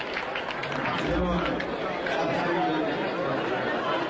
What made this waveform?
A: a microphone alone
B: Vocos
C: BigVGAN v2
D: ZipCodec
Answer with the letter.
A